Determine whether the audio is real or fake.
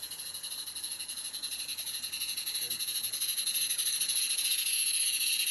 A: fake